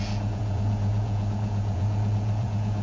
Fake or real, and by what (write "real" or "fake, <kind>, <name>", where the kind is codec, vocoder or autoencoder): fake, vocoder, Vocos